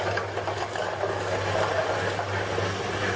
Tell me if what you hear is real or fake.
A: real